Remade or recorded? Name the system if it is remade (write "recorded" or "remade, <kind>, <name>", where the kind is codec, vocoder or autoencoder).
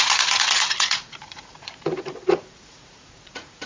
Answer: remade, vocoder, Vocos